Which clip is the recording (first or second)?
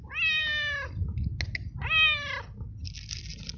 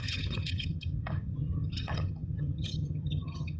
first